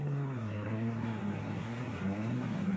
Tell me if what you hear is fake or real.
fake